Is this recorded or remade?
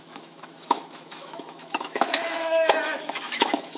remade